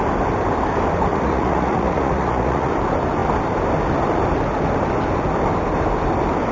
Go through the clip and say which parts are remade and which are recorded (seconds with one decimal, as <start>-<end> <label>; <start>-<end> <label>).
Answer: 0.0-1.1 recorded; 1.1-2.7 remade; 2.7-6.5 recorded